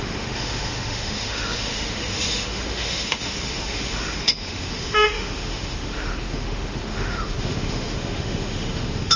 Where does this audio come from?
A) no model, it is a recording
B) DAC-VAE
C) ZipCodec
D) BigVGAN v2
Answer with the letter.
B